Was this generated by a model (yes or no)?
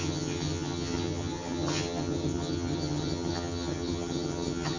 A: yes